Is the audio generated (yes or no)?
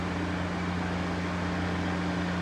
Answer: no